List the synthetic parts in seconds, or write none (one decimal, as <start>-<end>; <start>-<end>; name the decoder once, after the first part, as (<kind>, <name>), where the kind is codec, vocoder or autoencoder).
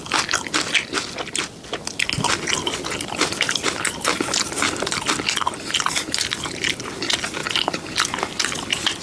none